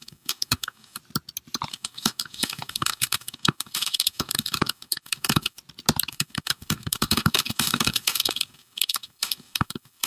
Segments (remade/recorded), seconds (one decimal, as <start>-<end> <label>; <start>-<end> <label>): 0.0-1.0 remade; 1.0-1.7 recorded; 1.7-5.6 remade; 5.6-6.1 recorded; 6.1-10.1 remade